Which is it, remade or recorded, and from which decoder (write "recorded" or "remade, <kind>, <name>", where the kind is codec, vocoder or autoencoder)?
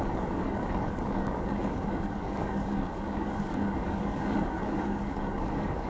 remade, codec, DAC